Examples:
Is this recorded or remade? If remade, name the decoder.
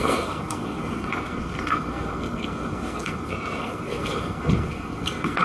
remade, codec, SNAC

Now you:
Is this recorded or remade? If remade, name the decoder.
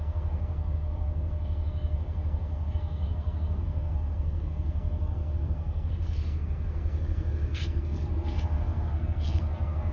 remade, codec, SNAC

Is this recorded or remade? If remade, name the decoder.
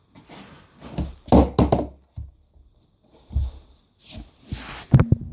recorded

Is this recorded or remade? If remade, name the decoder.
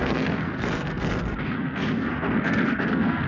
remade, codec, SNAC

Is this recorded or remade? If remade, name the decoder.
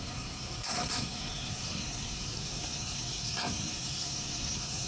remade, codec, SNAC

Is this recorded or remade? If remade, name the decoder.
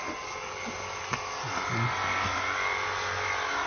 recorded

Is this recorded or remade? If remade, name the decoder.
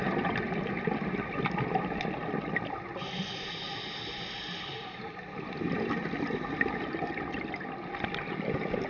recorded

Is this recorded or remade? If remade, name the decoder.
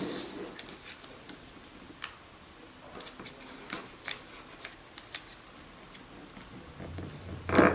recorded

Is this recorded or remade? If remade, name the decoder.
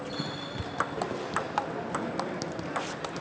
recorded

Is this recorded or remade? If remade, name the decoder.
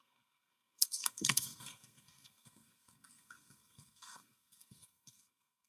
remade, codec, SNAC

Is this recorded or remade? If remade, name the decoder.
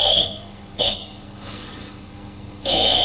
remade, codec, SNAC